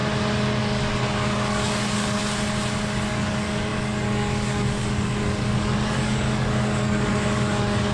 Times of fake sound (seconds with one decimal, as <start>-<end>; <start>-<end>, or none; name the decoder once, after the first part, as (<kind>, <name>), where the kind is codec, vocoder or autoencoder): 0.6-2.2 (codec, DAC); 3.1-7.9